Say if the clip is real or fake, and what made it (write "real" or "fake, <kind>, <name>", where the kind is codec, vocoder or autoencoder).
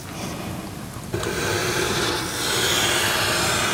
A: real